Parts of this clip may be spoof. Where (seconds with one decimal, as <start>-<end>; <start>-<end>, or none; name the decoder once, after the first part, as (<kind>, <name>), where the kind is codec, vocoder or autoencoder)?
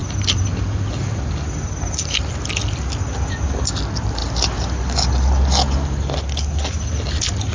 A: none